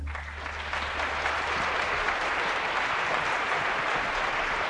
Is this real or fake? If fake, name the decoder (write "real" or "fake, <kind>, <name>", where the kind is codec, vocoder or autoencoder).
real